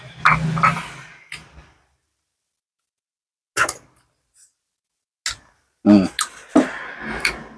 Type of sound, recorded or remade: recorded